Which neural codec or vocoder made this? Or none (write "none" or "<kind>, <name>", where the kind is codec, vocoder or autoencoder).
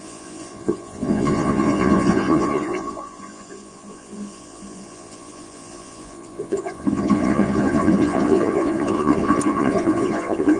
vocoder, Vocos